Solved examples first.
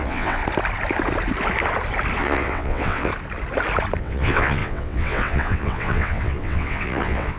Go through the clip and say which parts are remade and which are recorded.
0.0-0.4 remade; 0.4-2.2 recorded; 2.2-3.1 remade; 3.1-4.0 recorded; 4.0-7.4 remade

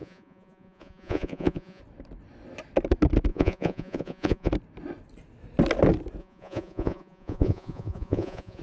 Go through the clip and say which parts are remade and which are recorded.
0.0-1.8 remade; 1.8-3.3 recorded; 3.3-4.5 remade; 4.5-6.2 recorded; 6.2-8.6 remade

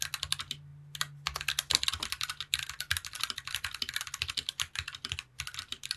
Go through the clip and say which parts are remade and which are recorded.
0.0-6.0 recorded

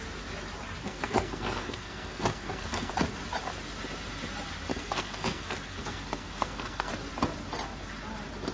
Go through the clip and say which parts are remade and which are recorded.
0.0-0.8 recorded; 0.8-2.9 remade; 2.9-4.7 recorded; 4.7-6.9 remade; 6.9-8.5 recorded

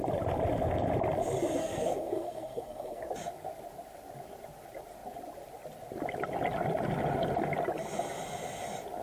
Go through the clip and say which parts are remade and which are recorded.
0.0-1.6 recorded; 1.6-3.0 remade; 3.0-9.0 recorded

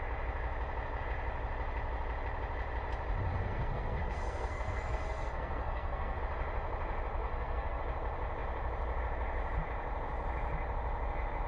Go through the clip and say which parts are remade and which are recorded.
0.0-3.3 recorded; 3.3-6.2 remade; 6.2-7.2 recorded; 7.2-7.8 remade; 7.8-11.5 recorded

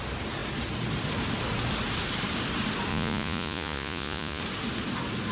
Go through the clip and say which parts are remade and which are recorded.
0.0-2.9 recorded; 2.9-4.4 remade; 4.4-5.3 recorded